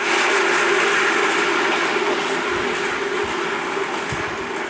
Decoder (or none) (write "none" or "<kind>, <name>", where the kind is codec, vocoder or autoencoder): none